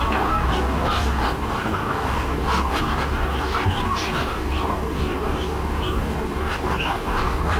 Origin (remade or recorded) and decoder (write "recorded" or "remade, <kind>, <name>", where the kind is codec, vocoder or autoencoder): remade, codec, DAC